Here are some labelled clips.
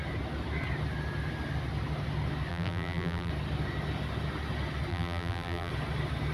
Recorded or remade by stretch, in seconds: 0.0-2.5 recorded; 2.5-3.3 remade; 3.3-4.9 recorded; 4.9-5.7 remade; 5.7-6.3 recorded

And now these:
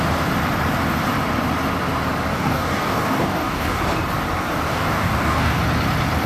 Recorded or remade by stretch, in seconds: 0.0-2.3 recorded; 2.3-3.8 remade; 3.8-4.7 recorded; 4.7-5.6 remade; 5.6-6.3 recorded

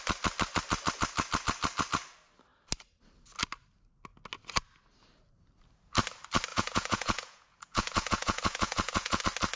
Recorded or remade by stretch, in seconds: 0.0-6.5 recorded; 6.5-9.2 remade; 9.2-9.6 recorded

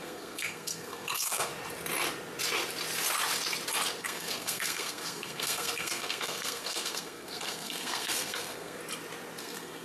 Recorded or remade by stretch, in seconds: 0.0-1.5 remade; 1.5-4.0 recorded; 4.0-8.8 remade; 8.8-9.4 recorded; 9.4-9.8 remade